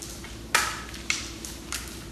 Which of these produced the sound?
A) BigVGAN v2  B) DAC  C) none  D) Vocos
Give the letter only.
C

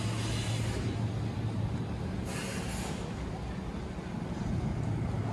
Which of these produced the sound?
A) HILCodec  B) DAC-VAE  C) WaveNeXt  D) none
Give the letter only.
D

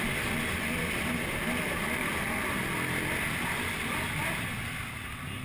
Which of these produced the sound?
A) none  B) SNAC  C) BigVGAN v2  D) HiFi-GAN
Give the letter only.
C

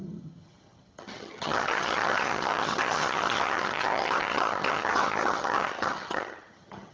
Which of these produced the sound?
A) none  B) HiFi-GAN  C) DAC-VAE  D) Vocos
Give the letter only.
B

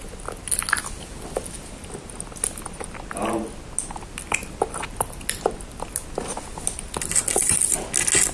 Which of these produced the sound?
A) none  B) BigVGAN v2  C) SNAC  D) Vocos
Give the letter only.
A